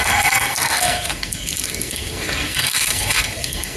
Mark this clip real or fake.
fake